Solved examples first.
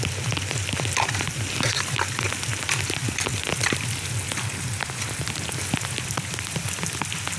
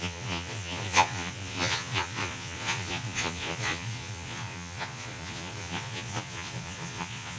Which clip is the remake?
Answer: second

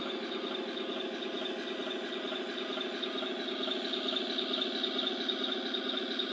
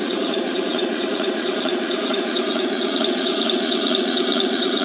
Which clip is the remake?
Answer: second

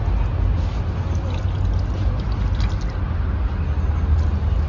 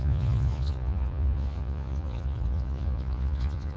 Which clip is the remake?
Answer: second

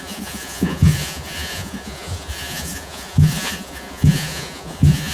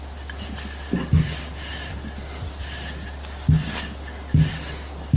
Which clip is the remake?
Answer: first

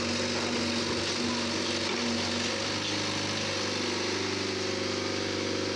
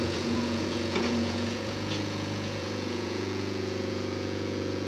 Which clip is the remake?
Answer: second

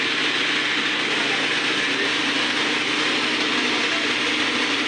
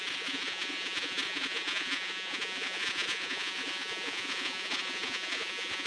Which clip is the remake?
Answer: second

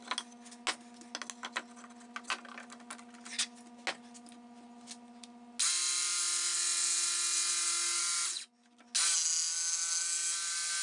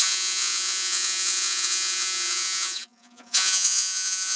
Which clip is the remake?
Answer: second